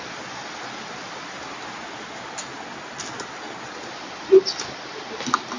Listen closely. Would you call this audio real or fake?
real